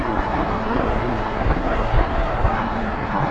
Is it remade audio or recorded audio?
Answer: remade